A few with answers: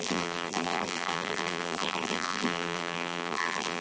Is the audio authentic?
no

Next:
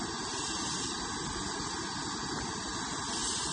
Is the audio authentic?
yes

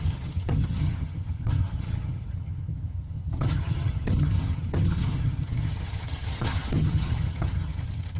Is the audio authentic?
no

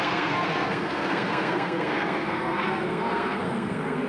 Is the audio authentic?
no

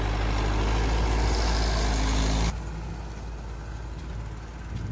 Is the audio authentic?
yes